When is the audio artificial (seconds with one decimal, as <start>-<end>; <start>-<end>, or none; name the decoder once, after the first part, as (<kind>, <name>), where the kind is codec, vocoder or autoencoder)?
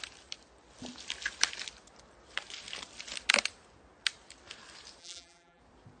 5.0-5.6 (vocoder, BigVGAN v2)